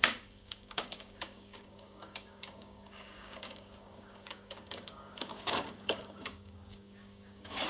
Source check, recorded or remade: remade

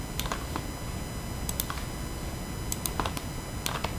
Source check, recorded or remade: recorded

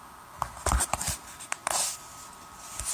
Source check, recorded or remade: recorded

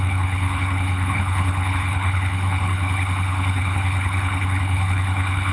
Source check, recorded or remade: remade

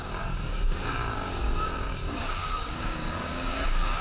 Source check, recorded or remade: remade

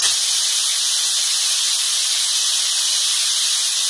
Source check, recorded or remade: recorded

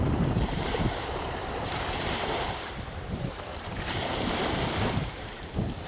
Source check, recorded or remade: remade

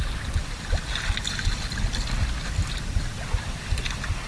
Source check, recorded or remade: recorded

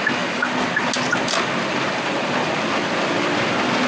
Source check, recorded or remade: recorded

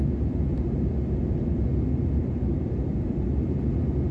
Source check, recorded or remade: recorded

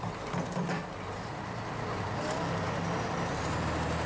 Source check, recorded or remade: recorded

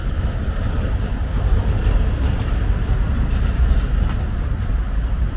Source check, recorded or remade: recorded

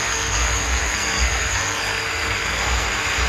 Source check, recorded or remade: remade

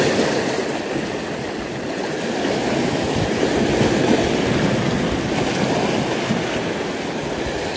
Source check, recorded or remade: recorded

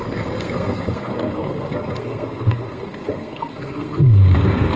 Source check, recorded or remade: remade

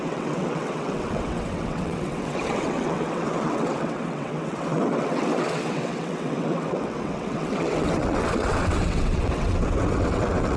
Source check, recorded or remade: remade